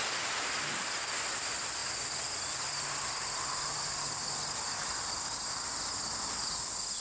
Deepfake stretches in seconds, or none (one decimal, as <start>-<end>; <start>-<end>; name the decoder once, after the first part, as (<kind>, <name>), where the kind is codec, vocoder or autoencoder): none